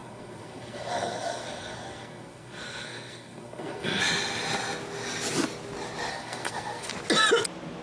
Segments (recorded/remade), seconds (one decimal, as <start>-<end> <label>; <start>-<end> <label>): 0.0-4.0 remade; 4.0-6.1 recorded; 6.1-6.9 remade; 6.9-7.8 recorded